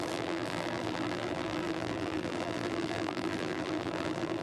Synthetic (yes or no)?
yes